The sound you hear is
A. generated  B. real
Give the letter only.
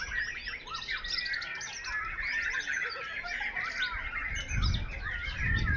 B